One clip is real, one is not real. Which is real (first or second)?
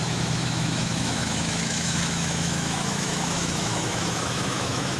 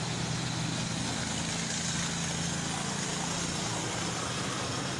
second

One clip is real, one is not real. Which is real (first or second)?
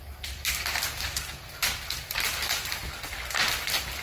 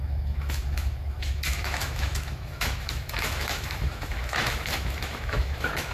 first